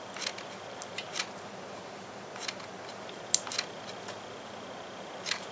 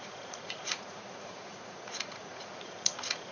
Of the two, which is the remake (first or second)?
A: second